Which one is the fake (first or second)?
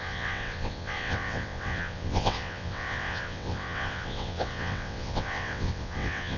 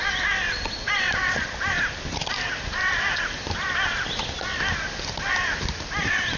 first